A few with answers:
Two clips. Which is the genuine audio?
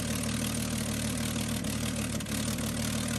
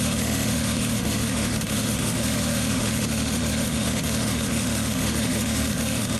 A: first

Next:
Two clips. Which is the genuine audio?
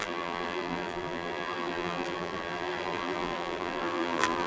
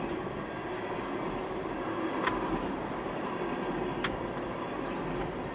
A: second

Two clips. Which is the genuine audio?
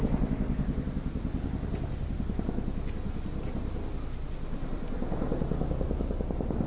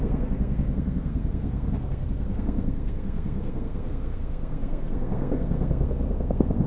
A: first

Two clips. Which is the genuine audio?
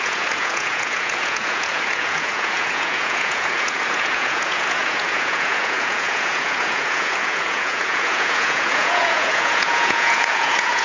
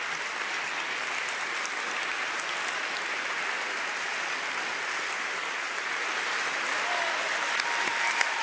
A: second